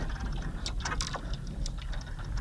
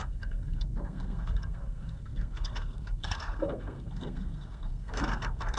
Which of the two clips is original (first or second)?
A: first